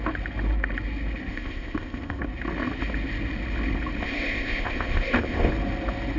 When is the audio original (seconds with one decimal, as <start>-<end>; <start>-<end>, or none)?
0.0-1.3; 2.2-4.0; 5.5-6.2